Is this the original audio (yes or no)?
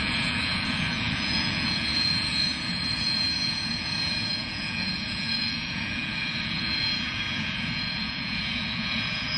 no